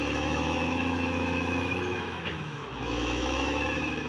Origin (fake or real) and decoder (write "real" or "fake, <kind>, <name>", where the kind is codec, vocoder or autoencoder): fake, autoencoder, DAC-VAE